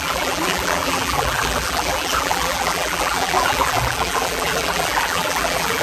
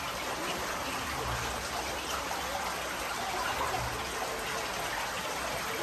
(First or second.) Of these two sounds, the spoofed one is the first